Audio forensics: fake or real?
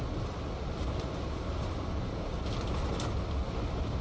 real